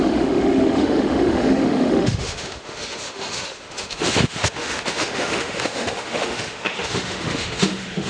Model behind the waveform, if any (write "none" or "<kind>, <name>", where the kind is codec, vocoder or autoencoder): autoencoder, DAC-VAE